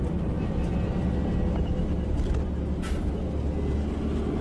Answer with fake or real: real